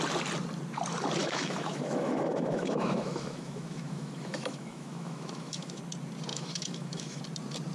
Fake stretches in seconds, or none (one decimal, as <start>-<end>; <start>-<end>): 1.2-5.8; 6.3-7.2